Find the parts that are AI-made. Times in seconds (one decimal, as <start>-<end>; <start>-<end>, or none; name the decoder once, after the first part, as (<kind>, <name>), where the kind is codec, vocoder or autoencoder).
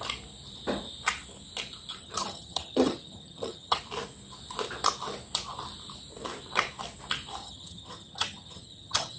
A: 2.0-3.8 (vocoder, HiFi-GAN); 7.4-9.2